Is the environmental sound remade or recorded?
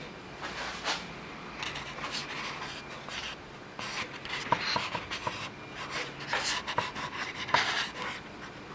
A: recorded